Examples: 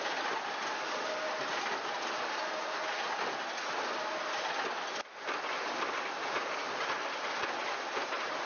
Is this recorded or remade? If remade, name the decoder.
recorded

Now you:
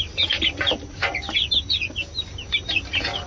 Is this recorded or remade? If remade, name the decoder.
recorded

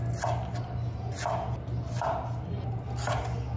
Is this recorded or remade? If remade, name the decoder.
recorded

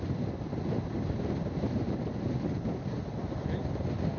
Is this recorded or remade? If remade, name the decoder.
recorded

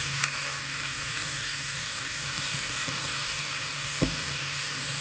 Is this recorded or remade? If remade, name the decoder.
remade, codec, DAC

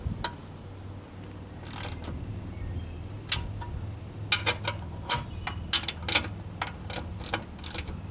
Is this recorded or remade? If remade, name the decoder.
recorded